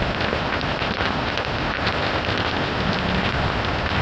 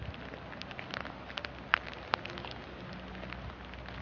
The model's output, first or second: first